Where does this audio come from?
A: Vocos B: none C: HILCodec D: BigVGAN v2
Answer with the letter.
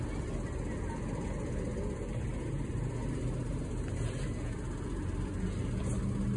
B